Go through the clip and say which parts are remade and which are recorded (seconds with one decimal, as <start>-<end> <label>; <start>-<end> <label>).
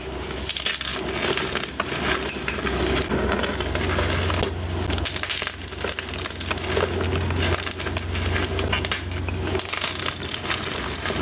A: 0.0-11.2 recorded